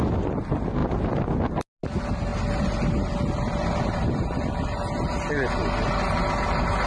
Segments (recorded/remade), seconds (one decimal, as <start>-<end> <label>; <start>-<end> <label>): 0.0-6.9 recorded